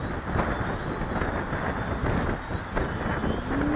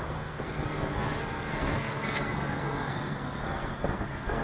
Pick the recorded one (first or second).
first